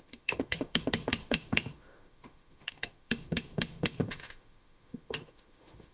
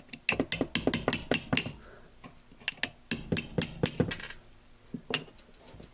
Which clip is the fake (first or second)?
first